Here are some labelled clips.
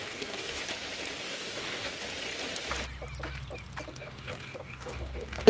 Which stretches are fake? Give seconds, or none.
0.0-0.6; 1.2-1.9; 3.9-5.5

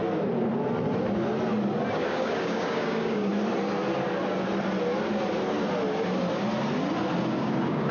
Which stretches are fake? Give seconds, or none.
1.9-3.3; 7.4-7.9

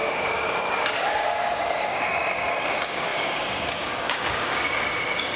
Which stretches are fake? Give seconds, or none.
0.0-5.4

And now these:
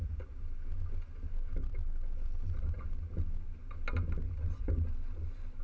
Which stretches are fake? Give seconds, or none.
none